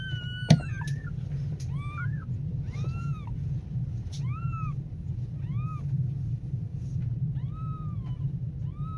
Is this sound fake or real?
real